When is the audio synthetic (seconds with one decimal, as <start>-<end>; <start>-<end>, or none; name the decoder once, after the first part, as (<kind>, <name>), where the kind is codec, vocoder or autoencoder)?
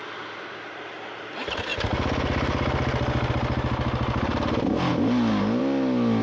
none